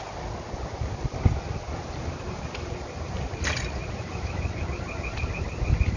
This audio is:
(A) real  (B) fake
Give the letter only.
A